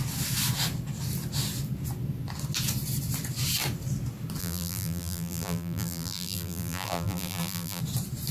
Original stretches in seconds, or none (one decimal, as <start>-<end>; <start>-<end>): 0.0-4.4; 7.8-8.3